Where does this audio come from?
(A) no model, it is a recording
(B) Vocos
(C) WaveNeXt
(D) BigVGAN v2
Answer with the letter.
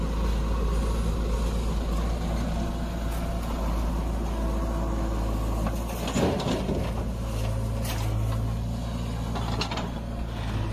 A